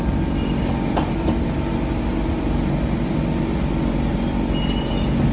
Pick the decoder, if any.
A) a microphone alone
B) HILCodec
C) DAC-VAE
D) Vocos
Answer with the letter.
A